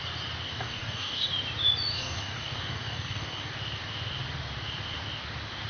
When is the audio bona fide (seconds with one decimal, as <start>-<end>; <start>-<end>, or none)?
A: 0.0-0.5; 1.3-1.9; 3.5-5.7